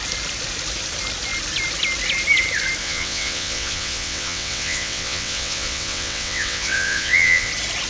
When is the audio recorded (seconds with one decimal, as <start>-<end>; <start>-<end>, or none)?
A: 0.0-2.8; 7.5-7.9